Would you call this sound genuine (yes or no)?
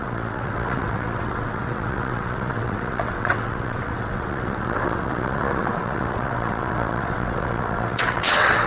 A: no